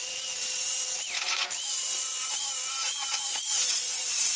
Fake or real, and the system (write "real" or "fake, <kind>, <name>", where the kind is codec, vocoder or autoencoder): fake, vocoder, Vocos